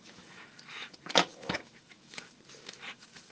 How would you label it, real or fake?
fake